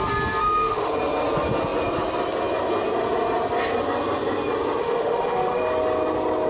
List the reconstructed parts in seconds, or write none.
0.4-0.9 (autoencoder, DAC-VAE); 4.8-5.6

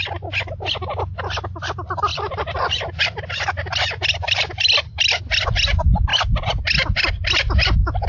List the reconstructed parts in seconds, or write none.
2.1-3.0 (vocoder, BigVGAN v2); 4.1-5.5

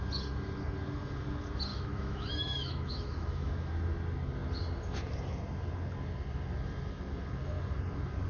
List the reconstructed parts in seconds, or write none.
1.7-3.7 (autoencoder, DAC-VAE)

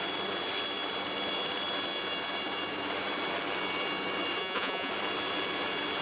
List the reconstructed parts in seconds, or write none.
4.4-4.9 (vocoder, Vocos)

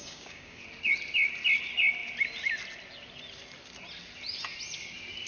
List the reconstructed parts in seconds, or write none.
0.0-0.6 (codec, DAC)

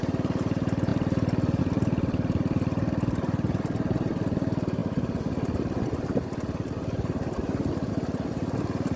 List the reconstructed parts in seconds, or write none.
none

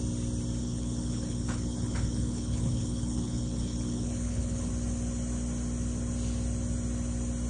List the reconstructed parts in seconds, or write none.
0.6-4.7 (codec, HILCodec)

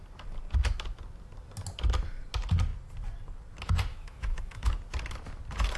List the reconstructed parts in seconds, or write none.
3.9-4.7 (autoencoder, DAC-VAE)